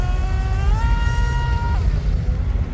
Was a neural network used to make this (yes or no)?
no